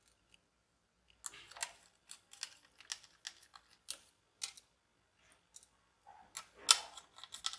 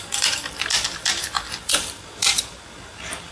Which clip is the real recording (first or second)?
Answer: first